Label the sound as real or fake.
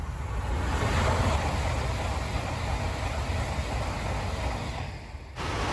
real